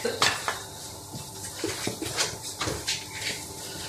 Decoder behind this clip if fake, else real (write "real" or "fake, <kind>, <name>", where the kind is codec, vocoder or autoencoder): real